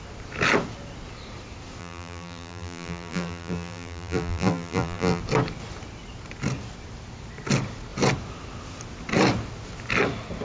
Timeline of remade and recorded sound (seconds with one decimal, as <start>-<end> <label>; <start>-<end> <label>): 0.0-1.8 recorded; 1.8-5.2 remade; 5.2-10.4 recorded

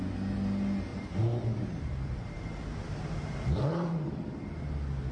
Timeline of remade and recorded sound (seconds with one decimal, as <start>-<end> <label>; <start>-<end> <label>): 0.0-0.9 recorded; 0.9-4.0 remade; 4.0-5.1 recorded

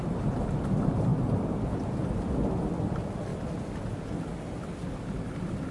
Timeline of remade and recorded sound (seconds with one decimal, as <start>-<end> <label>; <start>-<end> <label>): 0.0-5.7 recorded

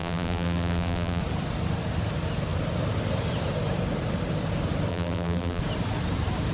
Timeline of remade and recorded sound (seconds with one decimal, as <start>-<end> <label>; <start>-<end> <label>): 0.0-1.2 remade; 1.2-4.9 recorded; 4.9-5.6 remade; 5.6-6.5 recorded

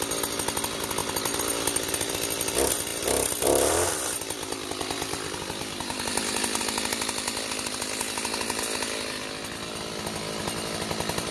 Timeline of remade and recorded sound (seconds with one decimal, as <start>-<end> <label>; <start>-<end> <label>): 0.0-1.0 recorded; 1.0-2.1 remade; 2.1-2.9 recorded; 2.9-6.6 remade; 6.6-11.3 recorded

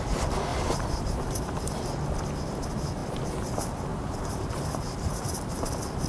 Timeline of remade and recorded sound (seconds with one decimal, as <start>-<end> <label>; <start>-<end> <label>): 0.0-0.5 recorded; 0.5-1.8 remade; 1.8-3.9 recorded; 3.9-5.6 remade; 5.6-6.1 recorded

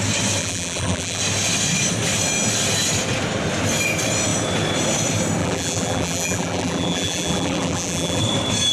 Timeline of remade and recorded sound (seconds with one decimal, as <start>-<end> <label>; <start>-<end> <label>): 0.0-0.4 recorded; 0.4-1.2 remade; 1.2-5.4 recorded; 5.4-8.2 remade; 8.2-8.7 recorded

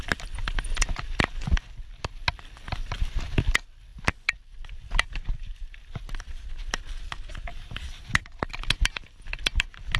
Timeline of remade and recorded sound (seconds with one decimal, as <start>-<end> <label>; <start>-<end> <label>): 0.0-3.9 recorded; 3.9-7.1 remade; 7.1-7.5 recorded; 7.5-8.1 remade; 8.1-10.0 recorded